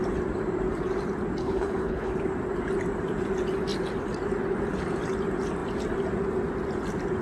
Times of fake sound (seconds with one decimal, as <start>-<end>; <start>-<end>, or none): 1.4-2.1